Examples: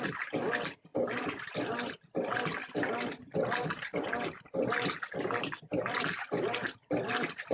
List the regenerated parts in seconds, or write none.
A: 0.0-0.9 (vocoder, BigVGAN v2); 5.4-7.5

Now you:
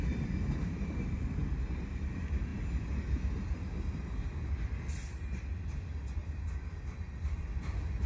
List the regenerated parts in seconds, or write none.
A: 0.0-2.5 (vocoder, BigVGAN v2); 5.5-6.2; 7.2-8.1